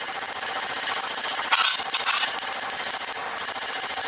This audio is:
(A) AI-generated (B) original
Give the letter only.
B